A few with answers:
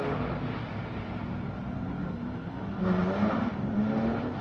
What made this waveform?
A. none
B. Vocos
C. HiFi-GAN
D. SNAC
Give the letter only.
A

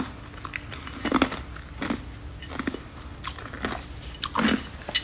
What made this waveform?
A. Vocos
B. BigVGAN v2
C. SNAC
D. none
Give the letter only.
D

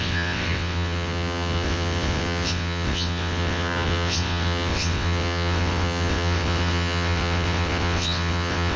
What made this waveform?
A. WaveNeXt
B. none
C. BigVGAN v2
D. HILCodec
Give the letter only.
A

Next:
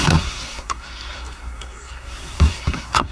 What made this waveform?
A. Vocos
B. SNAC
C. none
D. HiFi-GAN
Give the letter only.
B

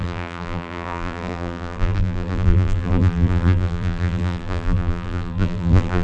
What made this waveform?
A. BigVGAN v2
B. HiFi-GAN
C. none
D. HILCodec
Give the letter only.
A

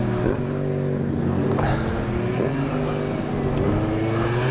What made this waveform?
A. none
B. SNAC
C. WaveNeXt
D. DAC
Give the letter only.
A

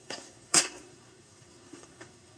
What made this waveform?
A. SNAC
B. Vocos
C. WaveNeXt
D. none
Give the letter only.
A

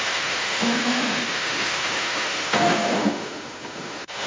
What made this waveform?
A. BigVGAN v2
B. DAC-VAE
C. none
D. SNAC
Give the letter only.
B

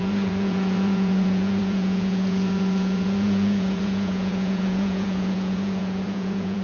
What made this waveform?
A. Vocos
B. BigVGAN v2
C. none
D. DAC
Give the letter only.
A